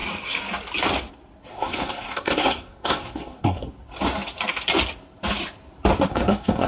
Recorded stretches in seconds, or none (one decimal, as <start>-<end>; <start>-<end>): 0.0-1.5; 3.7-6.1